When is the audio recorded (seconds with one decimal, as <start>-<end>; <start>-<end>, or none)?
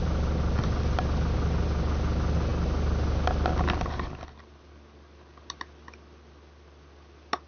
0.0-7.5